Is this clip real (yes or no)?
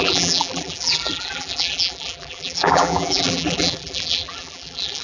no